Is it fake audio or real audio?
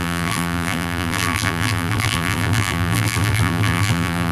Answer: fake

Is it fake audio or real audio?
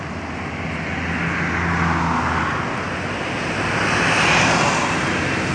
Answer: real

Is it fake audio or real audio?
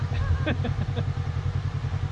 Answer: real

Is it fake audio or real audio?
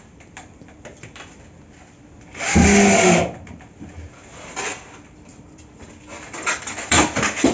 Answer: real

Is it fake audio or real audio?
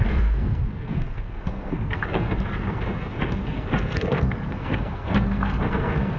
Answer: fake